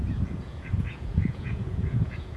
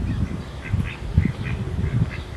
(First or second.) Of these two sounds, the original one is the second